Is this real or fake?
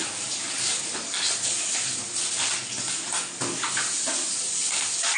real